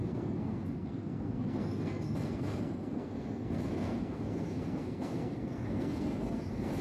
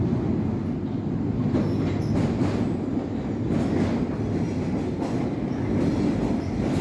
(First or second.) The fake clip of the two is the first